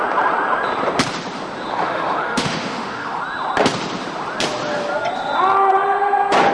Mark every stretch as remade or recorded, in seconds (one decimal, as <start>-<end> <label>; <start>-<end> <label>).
0.0-1.7 recorded; 1.7-3.2 remade; 3.2-6.5 recorded